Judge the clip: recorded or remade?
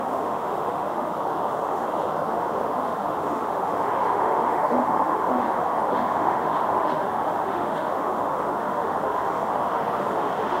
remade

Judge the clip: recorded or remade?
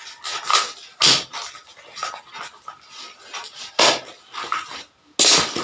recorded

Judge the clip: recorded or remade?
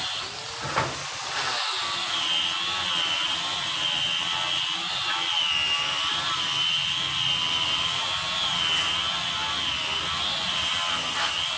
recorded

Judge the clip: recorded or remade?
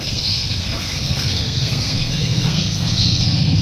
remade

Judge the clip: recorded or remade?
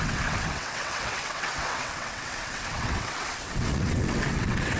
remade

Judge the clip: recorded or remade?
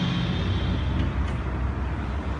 recorded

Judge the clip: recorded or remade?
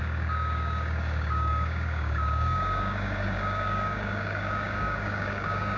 remade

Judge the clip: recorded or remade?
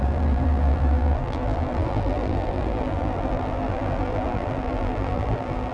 remade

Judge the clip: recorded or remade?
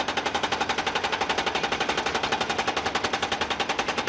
recorded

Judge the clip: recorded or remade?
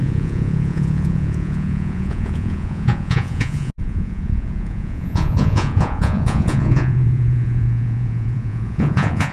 remade